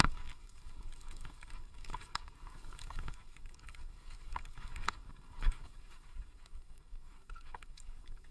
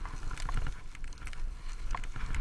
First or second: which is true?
second